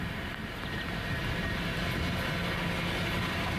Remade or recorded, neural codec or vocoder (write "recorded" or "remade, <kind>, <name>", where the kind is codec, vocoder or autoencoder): recorded